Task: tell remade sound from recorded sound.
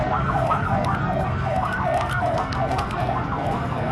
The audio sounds remade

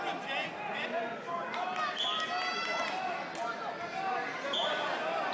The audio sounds recorded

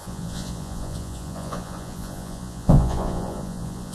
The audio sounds remade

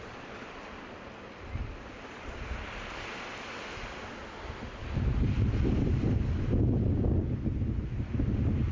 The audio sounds recorded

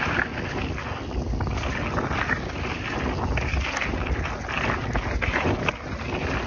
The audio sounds recorded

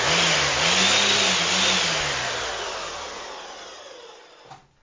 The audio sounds recorded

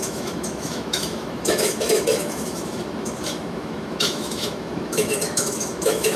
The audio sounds remade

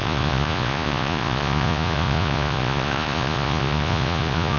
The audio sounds remade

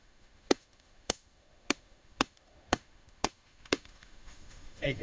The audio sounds remade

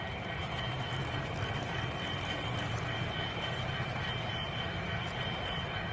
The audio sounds recorded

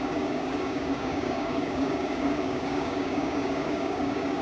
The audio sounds remade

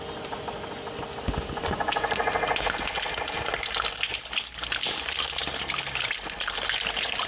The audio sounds recorded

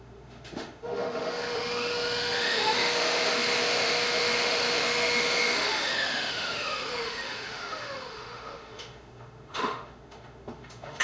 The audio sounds remade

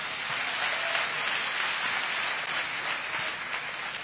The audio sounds recorded